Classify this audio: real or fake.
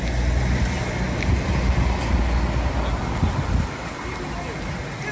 real